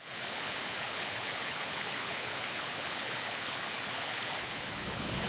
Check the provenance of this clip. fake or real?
fake